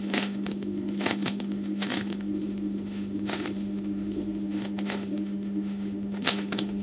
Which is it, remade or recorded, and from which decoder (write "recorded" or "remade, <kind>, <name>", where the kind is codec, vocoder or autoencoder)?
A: remade, autoencoder, DAC-VAE